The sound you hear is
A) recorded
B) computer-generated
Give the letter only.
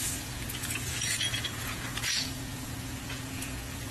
B